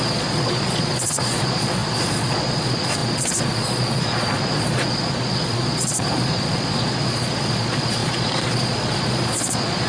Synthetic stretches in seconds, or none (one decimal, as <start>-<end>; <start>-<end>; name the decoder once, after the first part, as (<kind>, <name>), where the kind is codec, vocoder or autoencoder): 0.0-9.9 (vocoder, Vocos)